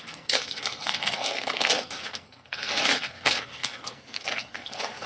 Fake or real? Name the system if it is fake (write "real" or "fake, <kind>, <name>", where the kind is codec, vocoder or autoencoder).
fake, codec, SNAC